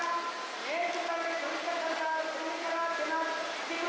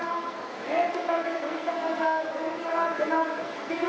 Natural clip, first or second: first